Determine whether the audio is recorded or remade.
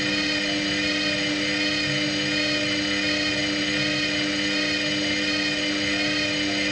recorded